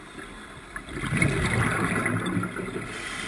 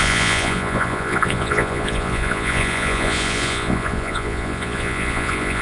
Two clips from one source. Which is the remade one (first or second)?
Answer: second